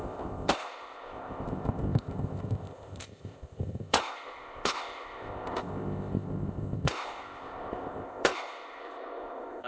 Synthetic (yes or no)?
yes